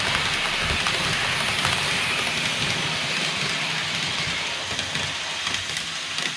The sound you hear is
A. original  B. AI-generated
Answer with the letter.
A